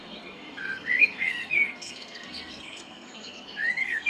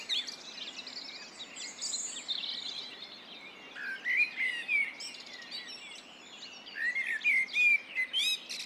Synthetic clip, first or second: first